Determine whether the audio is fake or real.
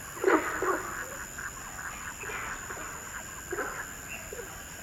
real